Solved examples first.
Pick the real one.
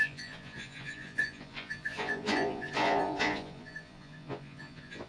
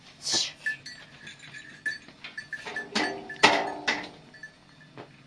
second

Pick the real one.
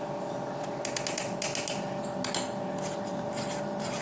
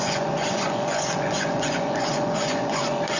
first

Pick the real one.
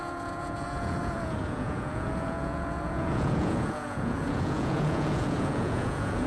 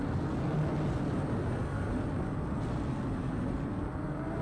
second